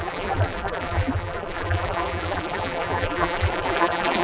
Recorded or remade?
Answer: remade